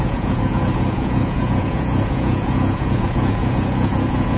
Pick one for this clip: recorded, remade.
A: remade